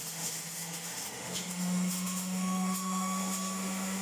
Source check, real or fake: fake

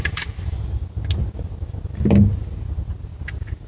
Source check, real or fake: real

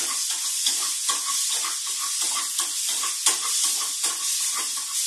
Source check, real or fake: real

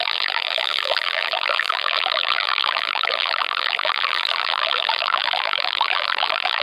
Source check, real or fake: fake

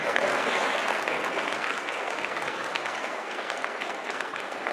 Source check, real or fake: fake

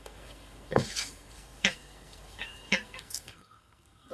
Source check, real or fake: fake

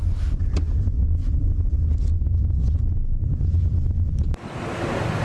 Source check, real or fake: real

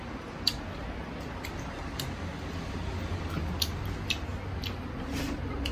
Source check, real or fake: real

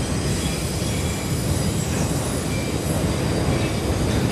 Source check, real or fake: real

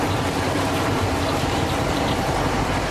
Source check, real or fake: fake